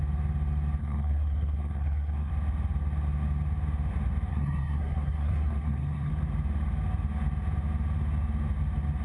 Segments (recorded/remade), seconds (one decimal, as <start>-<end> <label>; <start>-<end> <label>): 0.0-0.8 recorded; 0.8-2.3 remade; 2.3-4.3 recorded; 4.3-6.1 remade; 6.1-9.0 recorded